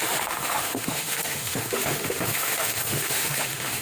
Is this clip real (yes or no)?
no